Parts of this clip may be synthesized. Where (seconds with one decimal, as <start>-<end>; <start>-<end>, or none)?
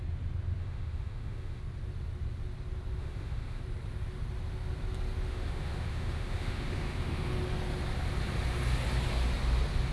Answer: 0.6-1.6; 3.0-3.6; 5.3-7.3